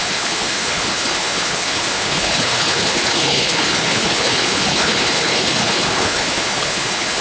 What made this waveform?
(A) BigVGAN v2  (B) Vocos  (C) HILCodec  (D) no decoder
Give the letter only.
C